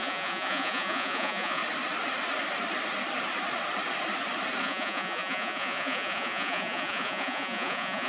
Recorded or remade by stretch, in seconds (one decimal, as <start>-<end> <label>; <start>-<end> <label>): 0.0-1.6 remade; 1.6-4.6 recorded; 4.6-8.1 remade